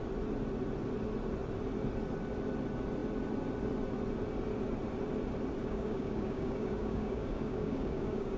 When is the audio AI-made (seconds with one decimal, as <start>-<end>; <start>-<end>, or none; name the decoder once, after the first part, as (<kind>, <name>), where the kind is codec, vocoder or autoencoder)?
5.6-8.4 (codec, DAC)

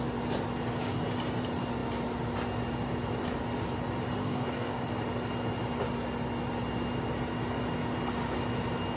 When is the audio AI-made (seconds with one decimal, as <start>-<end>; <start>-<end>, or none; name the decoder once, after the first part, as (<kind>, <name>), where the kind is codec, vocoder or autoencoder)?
4.2-4.8 (codec, DAC)

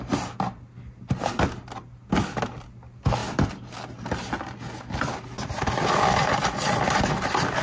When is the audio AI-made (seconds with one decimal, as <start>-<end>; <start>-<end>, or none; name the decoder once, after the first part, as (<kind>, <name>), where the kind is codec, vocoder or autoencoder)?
none

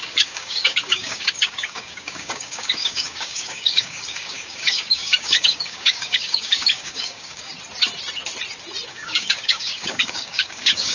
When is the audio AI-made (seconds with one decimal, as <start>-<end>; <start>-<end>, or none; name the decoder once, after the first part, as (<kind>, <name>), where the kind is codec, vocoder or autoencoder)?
0.0-7.5 (codec, DAC); 8.9-10.9

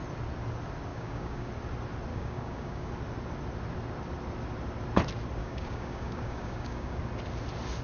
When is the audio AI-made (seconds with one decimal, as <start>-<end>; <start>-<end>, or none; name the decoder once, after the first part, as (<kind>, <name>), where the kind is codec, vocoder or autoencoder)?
0.9-1.5 (codec, DAC); 2.1-2.9; 5.4-7.0

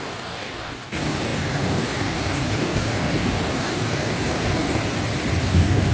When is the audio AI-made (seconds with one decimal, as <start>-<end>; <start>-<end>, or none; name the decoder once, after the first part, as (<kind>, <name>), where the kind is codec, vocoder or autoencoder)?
0.0-4.8 (codec, DAC); 5.4-5.9